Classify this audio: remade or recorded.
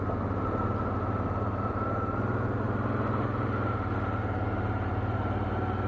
recorded